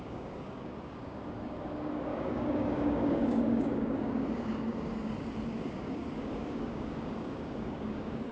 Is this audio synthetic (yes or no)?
yes